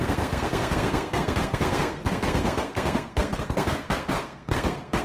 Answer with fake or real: fake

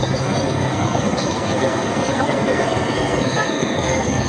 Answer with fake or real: fake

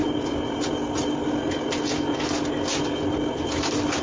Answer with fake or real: real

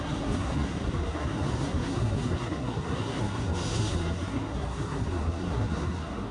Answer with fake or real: fake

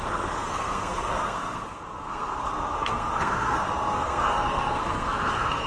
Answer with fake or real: fake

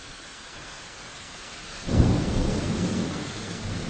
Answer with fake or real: fake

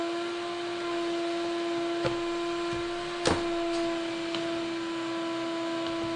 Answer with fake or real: real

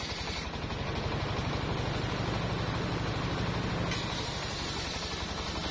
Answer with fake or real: real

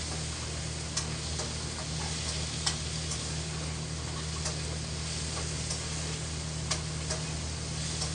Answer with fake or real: real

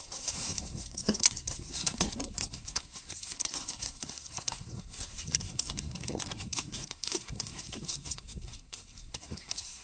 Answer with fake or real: fake